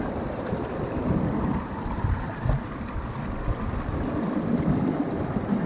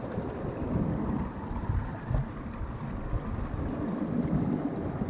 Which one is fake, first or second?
first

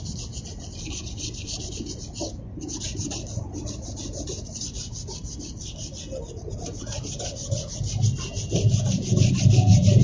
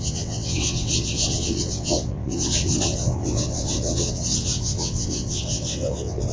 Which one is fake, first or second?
second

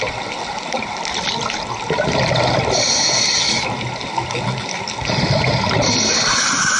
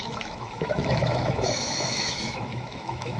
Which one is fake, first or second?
second